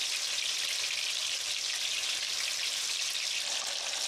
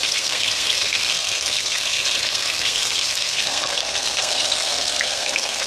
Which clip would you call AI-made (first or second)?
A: second